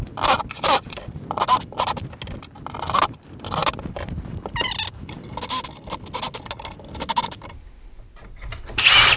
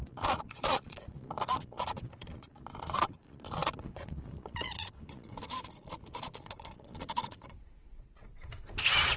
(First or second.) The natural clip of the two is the first